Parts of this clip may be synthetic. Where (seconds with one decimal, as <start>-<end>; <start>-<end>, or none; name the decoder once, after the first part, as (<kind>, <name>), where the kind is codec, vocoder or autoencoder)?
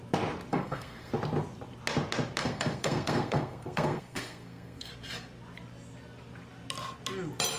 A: 0.5-1.1 (codec, SNAC); 2.4-4.9